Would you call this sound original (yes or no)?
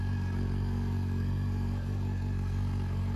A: no